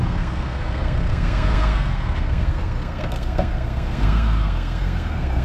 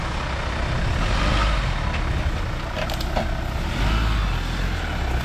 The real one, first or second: second